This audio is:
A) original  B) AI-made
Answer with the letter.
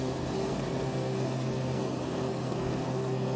B